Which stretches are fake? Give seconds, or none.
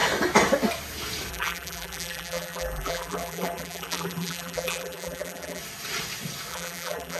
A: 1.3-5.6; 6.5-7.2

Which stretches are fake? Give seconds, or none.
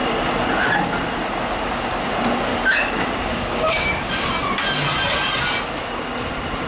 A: 2.5-4.1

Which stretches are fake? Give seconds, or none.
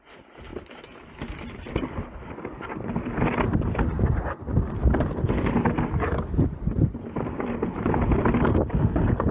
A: none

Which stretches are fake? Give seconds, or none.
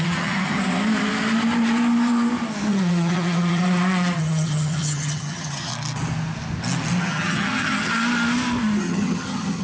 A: 0.0-0.6; 2.7-3.6; 4.2-5.7; 7.0-7.9; 8.8-9.6